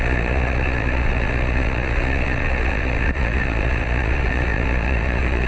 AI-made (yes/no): yes